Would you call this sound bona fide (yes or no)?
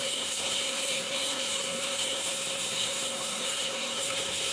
no